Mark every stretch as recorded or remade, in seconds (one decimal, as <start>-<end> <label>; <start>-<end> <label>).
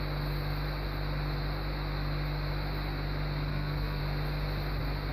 0.0-3.5 recorded; 3.5-4.0 remade; 4.0-5.1 recorded